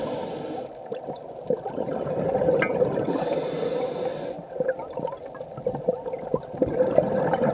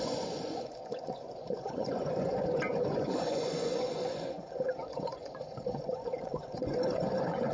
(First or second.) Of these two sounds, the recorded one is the first